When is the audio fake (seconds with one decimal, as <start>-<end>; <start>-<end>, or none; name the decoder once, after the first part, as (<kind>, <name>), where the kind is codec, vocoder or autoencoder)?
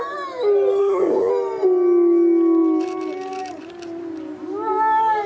0.8-1.3 (codec, SNAC)